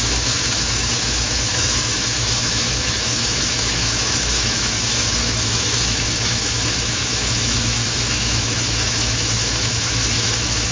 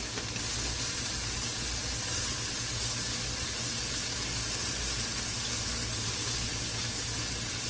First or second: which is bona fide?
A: second